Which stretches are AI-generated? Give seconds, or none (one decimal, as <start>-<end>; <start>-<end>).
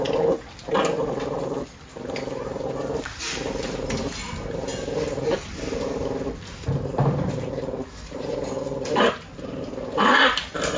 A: none